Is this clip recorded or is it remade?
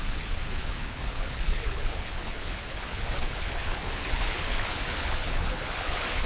remade